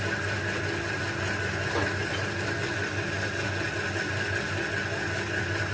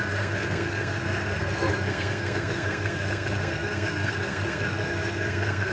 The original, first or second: first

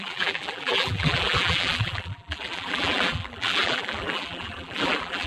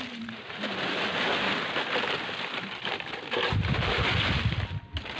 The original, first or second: second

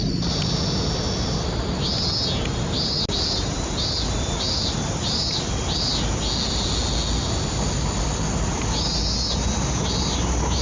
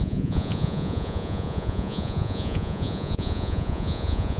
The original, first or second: first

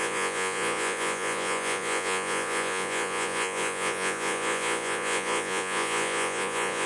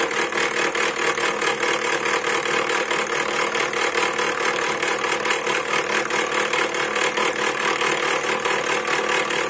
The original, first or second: second